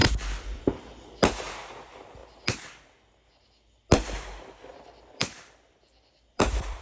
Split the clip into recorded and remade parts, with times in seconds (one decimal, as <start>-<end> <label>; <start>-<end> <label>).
0.0-0.6 remade; 0.6-4.7 recorded; 4.7-6.8 remade